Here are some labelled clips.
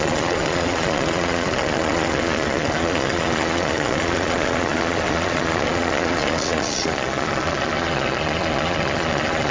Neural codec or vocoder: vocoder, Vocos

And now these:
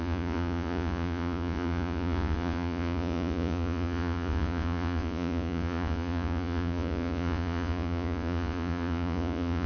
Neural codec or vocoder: vocoder, Vocos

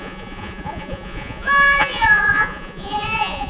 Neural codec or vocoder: vocoder, Vocos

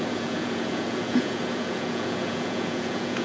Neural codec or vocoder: vocoder, Vocos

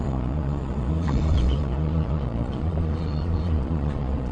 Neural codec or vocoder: vocoder, Vocos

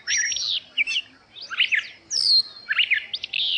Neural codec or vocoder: none